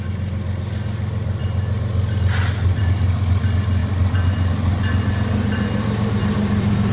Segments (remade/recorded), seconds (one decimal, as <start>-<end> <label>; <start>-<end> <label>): 0.0-6.9 recorded